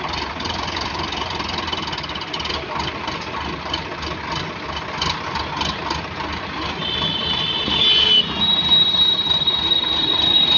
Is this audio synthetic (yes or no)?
no